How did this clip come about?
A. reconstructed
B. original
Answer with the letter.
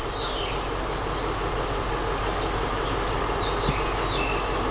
B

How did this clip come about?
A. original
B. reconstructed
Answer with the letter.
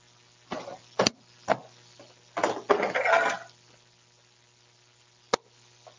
A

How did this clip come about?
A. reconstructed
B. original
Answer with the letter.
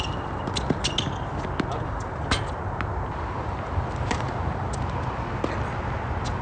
B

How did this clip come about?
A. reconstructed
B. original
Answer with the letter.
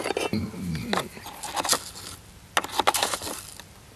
B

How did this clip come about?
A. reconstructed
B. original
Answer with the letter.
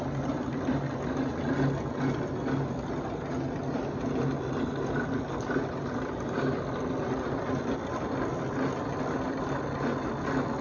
B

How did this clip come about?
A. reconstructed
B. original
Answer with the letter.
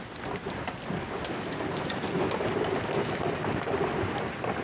B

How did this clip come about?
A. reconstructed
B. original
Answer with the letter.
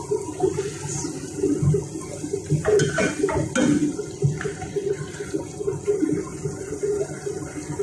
B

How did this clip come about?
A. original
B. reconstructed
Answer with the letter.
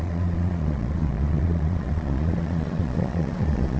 B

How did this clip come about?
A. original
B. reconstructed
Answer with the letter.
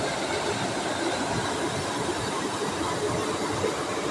A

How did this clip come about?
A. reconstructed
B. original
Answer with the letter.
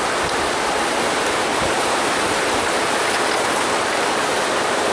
B